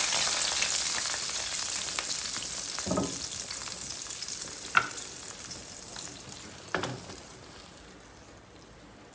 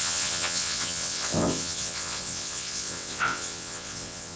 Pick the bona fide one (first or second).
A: first